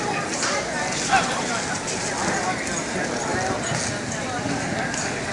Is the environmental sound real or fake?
real